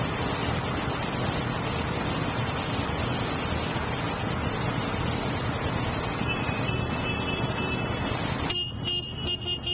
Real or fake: real